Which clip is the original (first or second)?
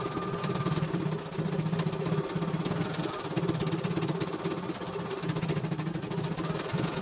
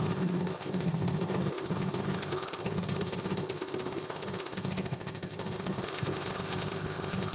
first